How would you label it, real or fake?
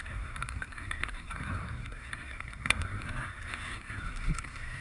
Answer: fake